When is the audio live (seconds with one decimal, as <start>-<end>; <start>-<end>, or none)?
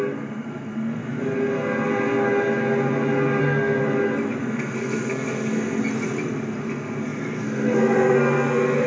1.0-3.4; 3.8-4.4; 5.8-6.6